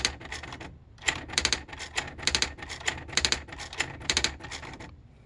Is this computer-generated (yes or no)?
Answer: no